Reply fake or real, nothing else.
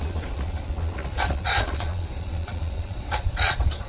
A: fake